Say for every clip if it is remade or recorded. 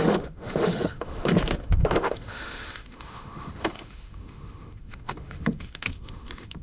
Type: remade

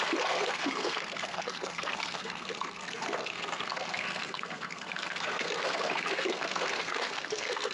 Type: remade